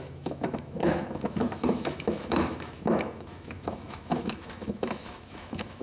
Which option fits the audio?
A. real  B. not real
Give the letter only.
B